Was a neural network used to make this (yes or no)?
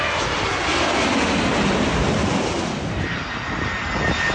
no